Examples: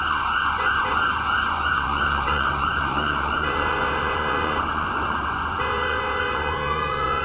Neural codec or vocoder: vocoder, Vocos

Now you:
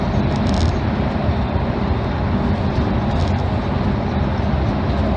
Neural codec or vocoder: none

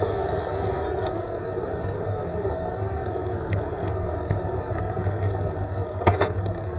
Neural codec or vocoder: codec, SNAC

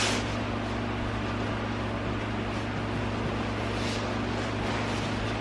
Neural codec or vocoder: none